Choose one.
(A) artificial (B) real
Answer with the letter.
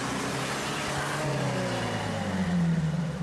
B